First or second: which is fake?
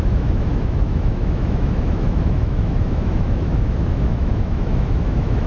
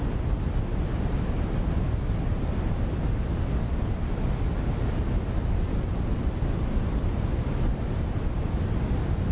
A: first